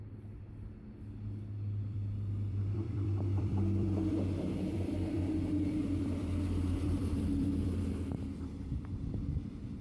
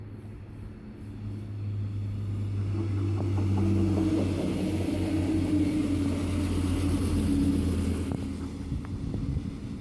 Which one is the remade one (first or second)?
first